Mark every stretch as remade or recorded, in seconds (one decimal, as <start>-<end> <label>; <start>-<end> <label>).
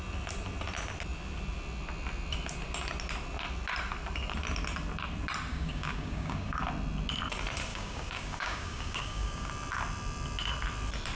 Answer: 0.0-5.5 recorded; 5.5-6.6 remade; 6.6-7.7 recorded; 7.7-9.5 remade; 9.5-11.1 recorded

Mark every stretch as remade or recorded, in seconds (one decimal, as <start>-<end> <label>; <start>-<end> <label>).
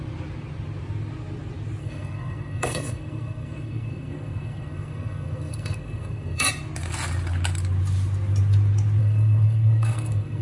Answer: 0.0-1.8 recorded; 1.8-6.5 remade; 6.5-9.0 recorded; 9.0-10.4 remade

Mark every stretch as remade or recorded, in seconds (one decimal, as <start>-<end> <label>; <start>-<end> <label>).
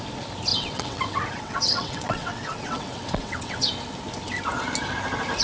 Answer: 0.0-0.5 recorded; 0.5-3.7 remade; 3.7-5.4 recorded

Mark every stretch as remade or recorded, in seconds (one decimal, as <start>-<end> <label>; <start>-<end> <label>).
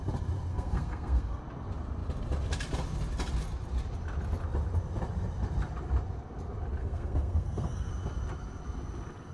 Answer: 0.0-0.5 recorded; 0.5-1.4 remade; 1.4-6.8 recorded; 6.8-7.9 remade; 7.9-9.3 recorded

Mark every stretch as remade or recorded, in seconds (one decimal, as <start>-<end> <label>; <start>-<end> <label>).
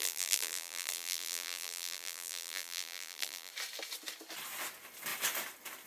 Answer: 0.0-3.5 remade; 3.5-5.9 recorded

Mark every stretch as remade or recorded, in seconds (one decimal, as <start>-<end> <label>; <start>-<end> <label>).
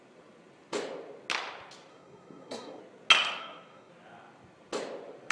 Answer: 0.0-1.9 recorded; 1.9-2.8 remade; 2.8-3.4 recorded; 3.4-3.9 remade; 3.9-5.3 recorded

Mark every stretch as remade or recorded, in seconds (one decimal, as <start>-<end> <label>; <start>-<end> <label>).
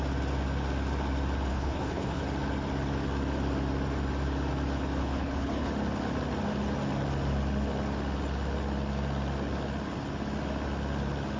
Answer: 0.0-1.5 recorded; 1.5-2.2 remade; 2.2-5.0 recorded; 5.0-5.7 remade; 5.7-11.4 recorded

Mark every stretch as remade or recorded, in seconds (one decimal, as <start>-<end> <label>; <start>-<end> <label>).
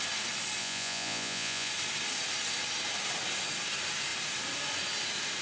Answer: 0.0-0.6 recorded; 0.6-1.7 remade; 1.7-5.4 recorded